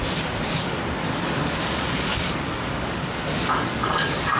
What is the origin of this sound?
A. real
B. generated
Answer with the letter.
B